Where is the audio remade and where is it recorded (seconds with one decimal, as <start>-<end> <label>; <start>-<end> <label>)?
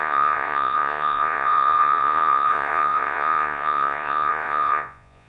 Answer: 0.0-5.3 remade